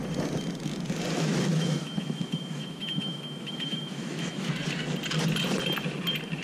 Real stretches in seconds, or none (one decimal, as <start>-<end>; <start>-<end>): 0.0-1.5; 4.5-6.4